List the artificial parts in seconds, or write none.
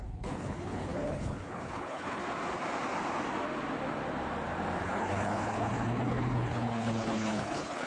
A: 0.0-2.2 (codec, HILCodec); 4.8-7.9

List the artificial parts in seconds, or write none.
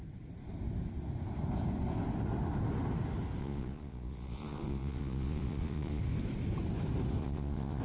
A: 3.4-6.0 (vocoder, Vocos); 7.2-7.8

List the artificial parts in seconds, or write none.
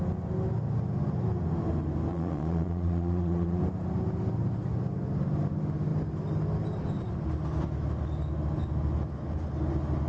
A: 2.1-3.6 (vocoder, Vocos)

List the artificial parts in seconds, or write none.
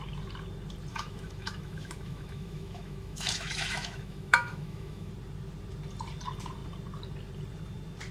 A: 0.9-5.1 (autoencoder, DAC-VAE)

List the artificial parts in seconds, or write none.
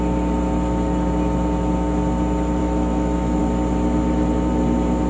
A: 2.6-3.4 (autoencoder, DAC-VAE)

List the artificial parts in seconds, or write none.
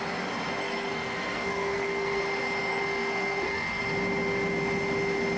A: 0.6-2.2 (codec, SNAC); 2.7-3.8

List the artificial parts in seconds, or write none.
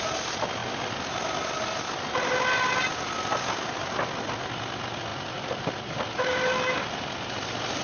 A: none